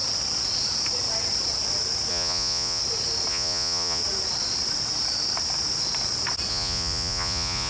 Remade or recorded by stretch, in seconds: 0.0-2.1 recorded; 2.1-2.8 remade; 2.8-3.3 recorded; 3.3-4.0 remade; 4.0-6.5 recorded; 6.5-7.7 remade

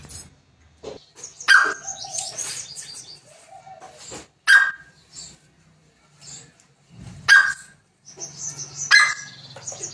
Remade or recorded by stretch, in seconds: 0.0-1.9 recorded; 1.9-3.6 remade; 3.6-7.4 recorded; 7.4-8.1 remade; 8.1-9.9 recorded